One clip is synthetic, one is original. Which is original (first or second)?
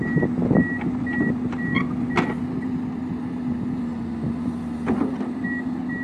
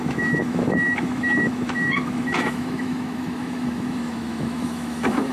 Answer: first